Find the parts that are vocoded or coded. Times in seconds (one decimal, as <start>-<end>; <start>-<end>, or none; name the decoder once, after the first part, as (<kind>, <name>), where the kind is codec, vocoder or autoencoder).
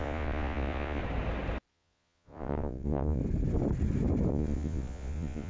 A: 0.0-1.0 (vocoder, Vocos); 1.7-3.2; 4.3-5.5